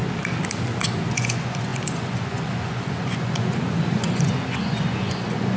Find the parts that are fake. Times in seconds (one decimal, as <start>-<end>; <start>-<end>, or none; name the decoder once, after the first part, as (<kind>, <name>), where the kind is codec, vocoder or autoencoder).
1.1-5.6 (vocoder, Vocos)